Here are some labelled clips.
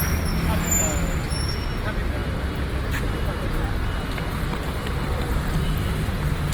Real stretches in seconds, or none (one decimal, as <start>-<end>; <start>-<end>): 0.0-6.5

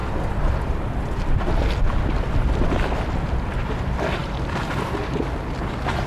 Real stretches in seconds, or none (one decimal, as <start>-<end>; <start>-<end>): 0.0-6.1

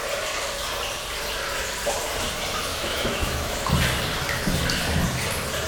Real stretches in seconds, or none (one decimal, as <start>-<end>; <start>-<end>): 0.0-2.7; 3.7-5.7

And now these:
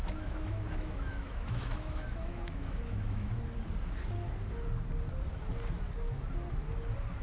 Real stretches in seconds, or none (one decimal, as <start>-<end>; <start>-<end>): 3.3-7.2

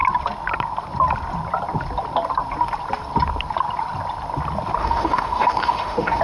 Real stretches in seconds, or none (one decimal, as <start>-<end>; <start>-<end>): 0.0-4.8